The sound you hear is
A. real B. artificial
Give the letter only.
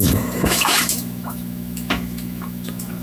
B